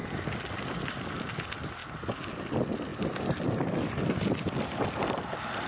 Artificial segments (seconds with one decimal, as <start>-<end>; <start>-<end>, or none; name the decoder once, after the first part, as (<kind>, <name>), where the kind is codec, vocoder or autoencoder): none